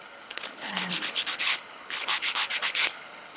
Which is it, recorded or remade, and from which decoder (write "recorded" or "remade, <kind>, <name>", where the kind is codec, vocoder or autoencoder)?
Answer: remade, codec, HILCodec